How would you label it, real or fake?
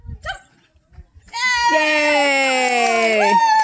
real